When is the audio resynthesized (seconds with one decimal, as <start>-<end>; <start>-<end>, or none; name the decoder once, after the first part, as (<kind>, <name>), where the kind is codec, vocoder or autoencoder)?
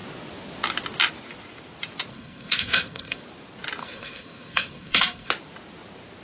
2.1-3.2 (codec, SNAC); 3.8-5.3